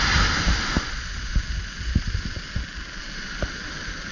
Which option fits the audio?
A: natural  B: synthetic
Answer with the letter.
A